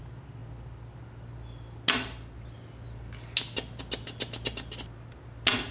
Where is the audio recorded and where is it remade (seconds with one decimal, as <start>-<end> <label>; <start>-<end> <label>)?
0.0-5.7 recorded